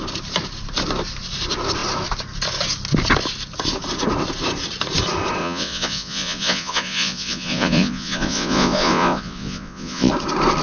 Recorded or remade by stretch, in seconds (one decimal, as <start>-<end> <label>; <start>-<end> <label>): 0.0-5.4 recorded; 5.4-10.1 remade; 10.1-10.6 recorded